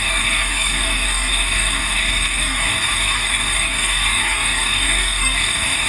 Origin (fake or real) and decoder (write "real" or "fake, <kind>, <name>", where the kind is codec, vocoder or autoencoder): fake, codec, DAC